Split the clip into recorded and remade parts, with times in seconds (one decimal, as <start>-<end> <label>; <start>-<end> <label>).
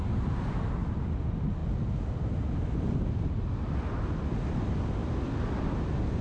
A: 0.0-6.2 recorded